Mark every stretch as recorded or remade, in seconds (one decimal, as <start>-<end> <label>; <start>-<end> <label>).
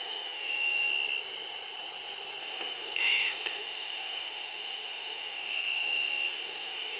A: 0.0-0.9 remade; 0.9-2.4 recorded; 2.4-7.0 remade